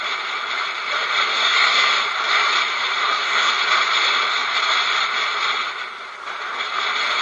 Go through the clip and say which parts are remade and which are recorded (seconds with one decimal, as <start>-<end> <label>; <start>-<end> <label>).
0.0-1.3 recorded; 1.3-1.9 remade; 1.9-3.0 recorded; 3.0-3.5 remade; 3.5-7.2 recorded